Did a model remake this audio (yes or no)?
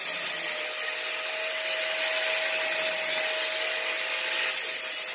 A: no